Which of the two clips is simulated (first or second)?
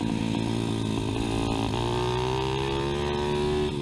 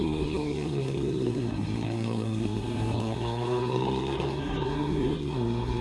second